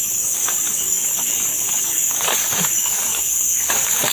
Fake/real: fake